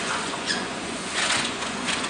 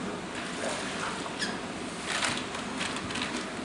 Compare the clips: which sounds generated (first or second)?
first